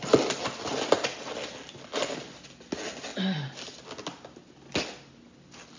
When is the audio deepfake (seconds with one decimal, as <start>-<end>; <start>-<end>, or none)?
none